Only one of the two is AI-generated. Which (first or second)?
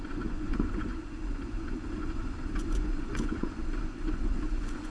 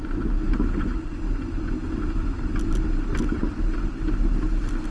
first